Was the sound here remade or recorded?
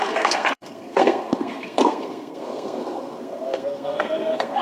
remade